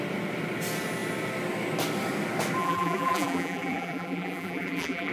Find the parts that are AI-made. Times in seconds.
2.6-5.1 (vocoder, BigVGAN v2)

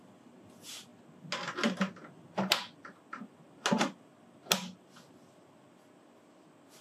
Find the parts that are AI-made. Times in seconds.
none